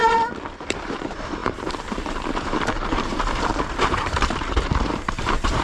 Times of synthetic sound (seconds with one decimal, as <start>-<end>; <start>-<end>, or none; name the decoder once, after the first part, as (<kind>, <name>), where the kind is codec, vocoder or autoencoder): 0.5-5.6 (vocoder, BigVGAN v2)